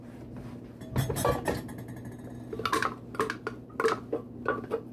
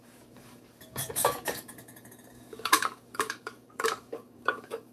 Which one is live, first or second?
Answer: first